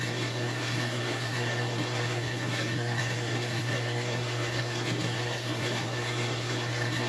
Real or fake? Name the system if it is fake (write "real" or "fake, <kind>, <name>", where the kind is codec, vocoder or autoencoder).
fake, codec, SNAC